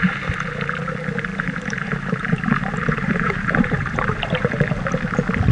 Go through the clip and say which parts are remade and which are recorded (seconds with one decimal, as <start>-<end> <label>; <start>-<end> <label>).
0.0-1.3 recorded; 1.3-4.6 remade; 4.6-5.5 recorded